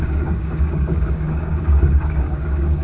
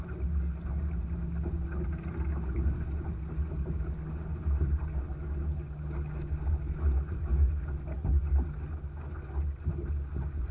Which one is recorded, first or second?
second